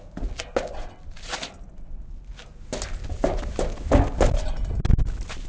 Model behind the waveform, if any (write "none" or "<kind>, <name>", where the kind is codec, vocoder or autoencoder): none